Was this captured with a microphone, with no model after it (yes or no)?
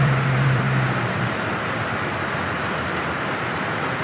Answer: no